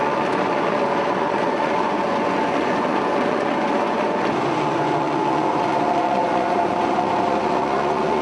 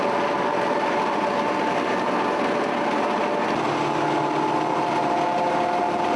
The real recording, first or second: second